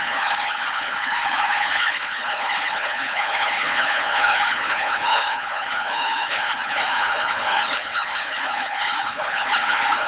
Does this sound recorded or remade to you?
remade